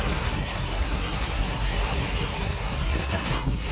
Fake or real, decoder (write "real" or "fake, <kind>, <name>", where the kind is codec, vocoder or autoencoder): fake, codec, SNAC